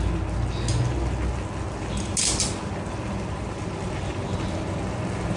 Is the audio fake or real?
real